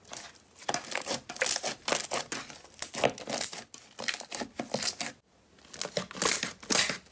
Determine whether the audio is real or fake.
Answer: real